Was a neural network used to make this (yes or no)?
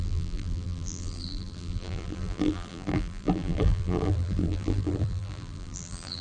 yes